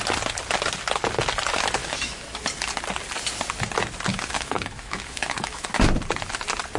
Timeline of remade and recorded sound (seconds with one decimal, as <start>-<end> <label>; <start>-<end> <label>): 0.0-1.8 recorded; 1.8-2.4 remade; 2.4-4.1 recorded; 4.1-5.7 remade; 5.7-6.8 recorded